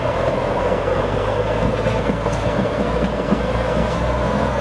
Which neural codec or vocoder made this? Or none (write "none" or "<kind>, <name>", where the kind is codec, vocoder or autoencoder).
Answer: codec, SNAC